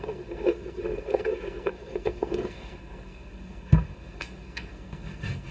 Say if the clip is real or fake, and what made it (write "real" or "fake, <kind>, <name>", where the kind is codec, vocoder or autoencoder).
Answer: fake, codec, SNAC